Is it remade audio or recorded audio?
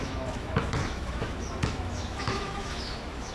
remade